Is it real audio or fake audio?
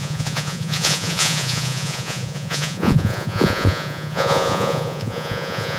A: fake